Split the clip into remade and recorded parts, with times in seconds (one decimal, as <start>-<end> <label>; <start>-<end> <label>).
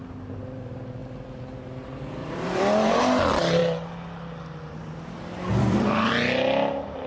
0.0-2.2 recorded; 2.2-3.0 remade; 3.0-5.5 recorded; 5.5-6.1 remade; 6.1-7.1 recorded